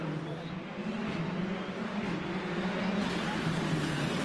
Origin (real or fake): real